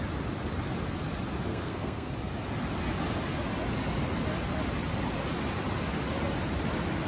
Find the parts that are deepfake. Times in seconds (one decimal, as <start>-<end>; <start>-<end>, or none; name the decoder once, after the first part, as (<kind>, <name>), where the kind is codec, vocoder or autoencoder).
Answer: 1.5-2.1 (codec, SNAC)